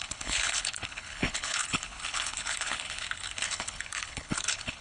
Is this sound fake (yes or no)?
yes